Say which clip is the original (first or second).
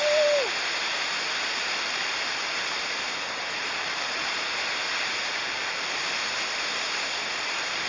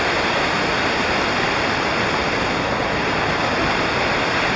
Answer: second